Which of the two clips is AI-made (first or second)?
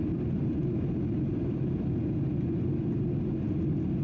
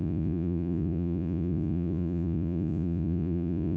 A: second